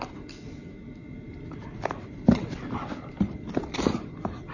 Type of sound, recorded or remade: remade